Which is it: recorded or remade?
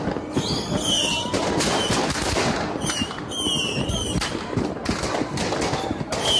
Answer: recorded